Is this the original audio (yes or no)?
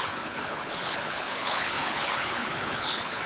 no